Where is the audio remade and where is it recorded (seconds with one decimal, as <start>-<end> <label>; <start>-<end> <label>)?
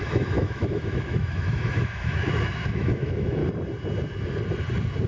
0.0-3.4 remade; 3.4-5.1 recorded